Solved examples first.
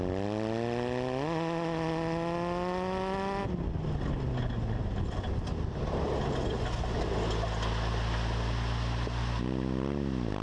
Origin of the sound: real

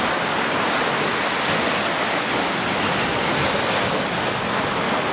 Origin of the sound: real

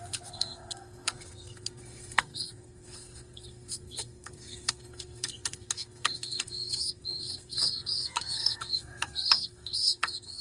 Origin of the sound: fake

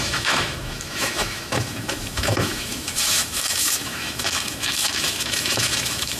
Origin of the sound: fake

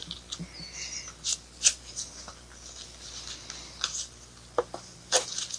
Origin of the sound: real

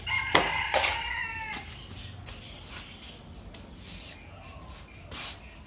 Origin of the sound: real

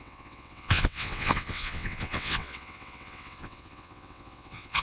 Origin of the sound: fake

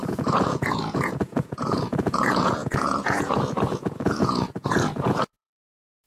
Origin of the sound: fake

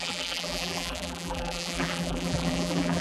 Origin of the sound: fake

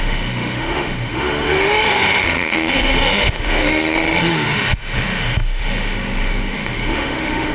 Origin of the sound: fake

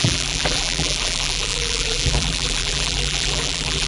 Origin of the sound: fake